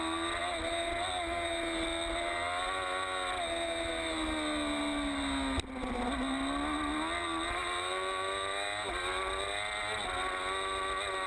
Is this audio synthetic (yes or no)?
no